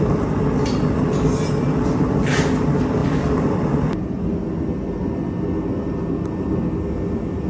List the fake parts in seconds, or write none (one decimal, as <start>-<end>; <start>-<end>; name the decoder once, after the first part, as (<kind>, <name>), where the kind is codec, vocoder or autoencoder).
none